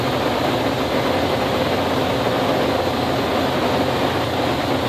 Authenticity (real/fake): real